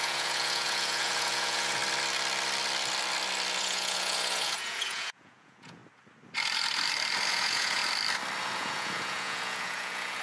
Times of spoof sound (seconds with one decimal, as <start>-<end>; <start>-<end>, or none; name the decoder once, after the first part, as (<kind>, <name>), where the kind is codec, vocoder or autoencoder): 0.0-1.8 (vocoder, Vocos); 3.6-5.8; 7.3-7.8; 8.4-10.2